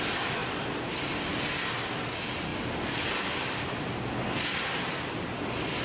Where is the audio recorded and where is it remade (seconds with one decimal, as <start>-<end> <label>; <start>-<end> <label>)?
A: 0.0-5.8 recorded